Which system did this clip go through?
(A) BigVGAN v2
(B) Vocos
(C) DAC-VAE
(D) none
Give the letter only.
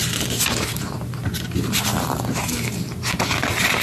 A